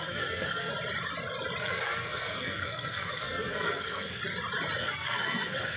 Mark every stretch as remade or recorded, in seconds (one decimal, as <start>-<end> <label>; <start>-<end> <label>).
0.0-0.7 remade; 0.7-1.6 recorded; 1.6-4.2 remade; 4.2-4.8 recorded; 4.8-5.8 remade